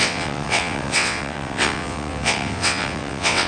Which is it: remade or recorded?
remade